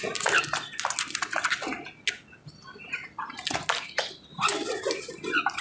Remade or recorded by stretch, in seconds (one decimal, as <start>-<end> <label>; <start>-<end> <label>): 0.0-5.6 recorded